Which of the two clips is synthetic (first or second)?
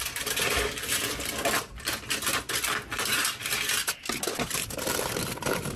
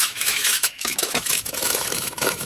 second